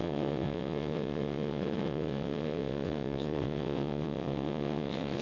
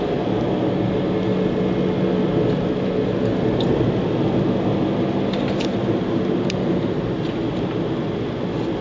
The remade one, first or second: first